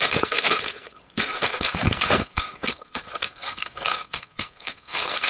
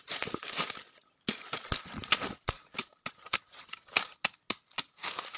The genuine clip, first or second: second